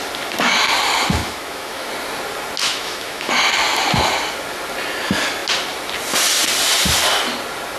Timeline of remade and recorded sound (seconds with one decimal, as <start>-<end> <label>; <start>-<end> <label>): 0.0-1.2 recorded; 1.2-1.9 remade; 1.9-2.6 recorded; 2.6-3.3 remade; 3.3-7.8 recorded